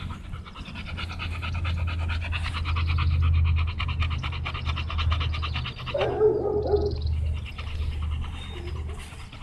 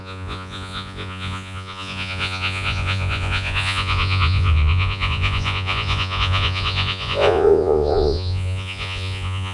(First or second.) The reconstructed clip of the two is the second